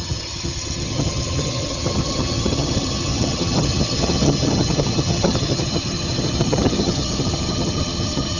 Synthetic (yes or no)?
yes